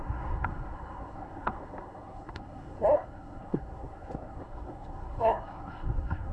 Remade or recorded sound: remade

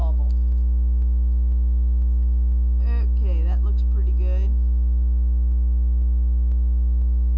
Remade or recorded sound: recorded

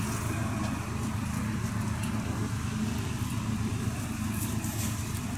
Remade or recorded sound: recorded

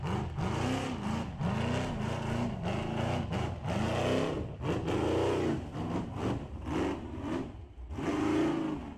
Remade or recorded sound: recorded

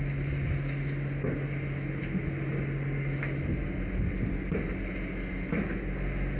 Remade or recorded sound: recorded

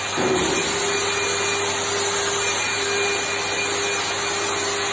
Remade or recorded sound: recorded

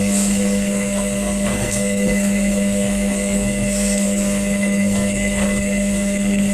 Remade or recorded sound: remade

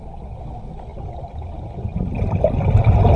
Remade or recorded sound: recorded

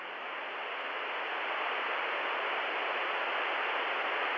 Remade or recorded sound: recorded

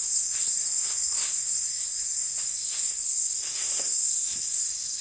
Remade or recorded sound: remade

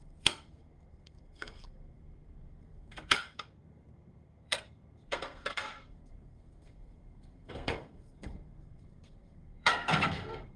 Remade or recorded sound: remade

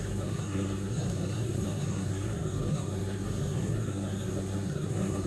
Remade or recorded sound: remade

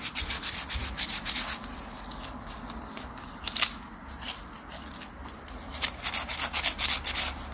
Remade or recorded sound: recorded